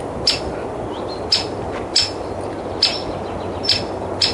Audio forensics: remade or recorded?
recorded